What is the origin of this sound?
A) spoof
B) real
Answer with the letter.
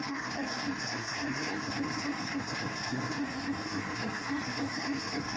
A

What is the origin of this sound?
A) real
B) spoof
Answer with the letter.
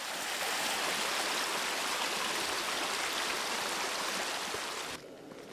A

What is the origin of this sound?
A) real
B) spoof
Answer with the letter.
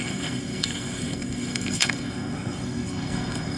B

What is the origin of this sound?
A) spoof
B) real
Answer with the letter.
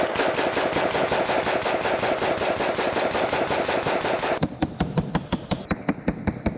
B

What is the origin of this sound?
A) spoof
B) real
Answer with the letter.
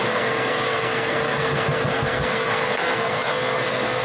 A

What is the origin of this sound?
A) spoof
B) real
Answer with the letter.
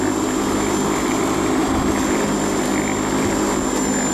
B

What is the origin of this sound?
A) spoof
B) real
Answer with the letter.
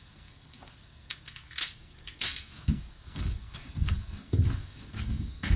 A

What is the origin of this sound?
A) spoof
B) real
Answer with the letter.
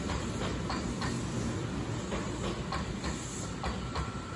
B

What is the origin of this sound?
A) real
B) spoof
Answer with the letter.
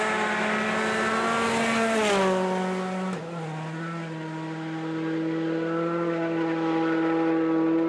A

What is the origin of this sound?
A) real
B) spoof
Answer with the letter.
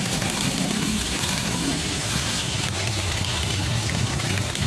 B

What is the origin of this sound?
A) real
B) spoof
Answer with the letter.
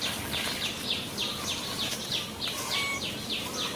A